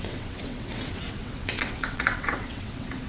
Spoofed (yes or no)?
yes